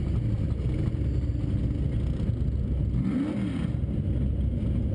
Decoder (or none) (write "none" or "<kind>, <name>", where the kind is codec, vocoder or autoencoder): none